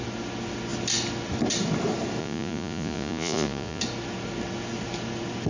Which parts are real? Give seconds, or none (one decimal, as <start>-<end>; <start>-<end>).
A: 0.0-2.2; 3.8-5.5